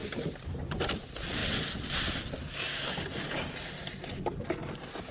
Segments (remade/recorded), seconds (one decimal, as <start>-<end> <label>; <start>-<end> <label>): 0.0-5.1 recorded